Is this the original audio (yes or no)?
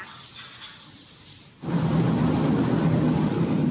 yes